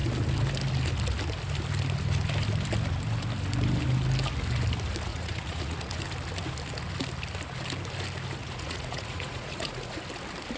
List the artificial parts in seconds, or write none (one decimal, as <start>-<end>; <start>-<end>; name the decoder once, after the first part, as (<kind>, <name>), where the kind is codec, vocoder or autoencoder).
5.1-6.0 (vocoder, Vocos); 8.4-10.0